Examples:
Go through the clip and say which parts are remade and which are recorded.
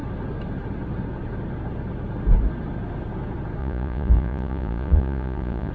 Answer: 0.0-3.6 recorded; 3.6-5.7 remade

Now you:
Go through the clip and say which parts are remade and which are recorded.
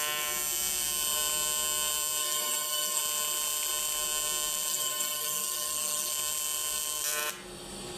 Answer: 0.0-2.2 recorded; 2.2-3.0 remade; 3.0-4.7 recorded; 4.7-6.1 remade; 6.1-8.0 recorded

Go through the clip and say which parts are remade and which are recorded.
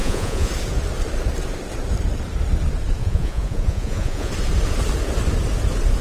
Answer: 0.0-0.5 remade; 0.5-3.0 recorded; 3.0-4.3 remade; 4.3-6.0 recorded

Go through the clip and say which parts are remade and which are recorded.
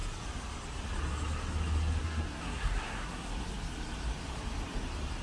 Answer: 0.0-2.0 recorded; 2.0-3.3 remade; 3.3-5.2 recorded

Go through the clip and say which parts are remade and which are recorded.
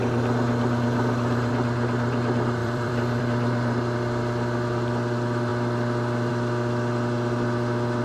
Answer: 0.0-1.5 remade; 1.5-2.6 recorded; 2.6-3.2 remade; 3.2-8.0 recorded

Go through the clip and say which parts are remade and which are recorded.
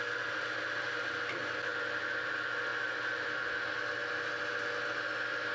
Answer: 0.0-5.5 recorded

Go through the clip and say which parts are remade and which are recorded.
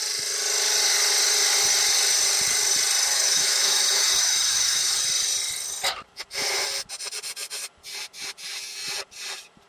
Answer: 0.0-3.1 recorded; 3.1-5.0 remade; 5.0-9.7 recorded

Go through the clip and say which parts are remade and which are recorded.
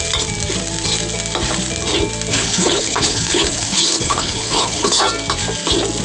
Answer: 0.0-2.3 recorded; 2.3-5.0 remade; 5.0-6.0 recorded